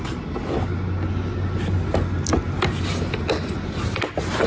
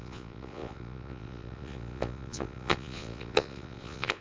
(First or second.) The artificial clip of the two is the second